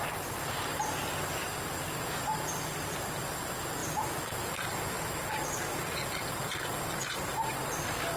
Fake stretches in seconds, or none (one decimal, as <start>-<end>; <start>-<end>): none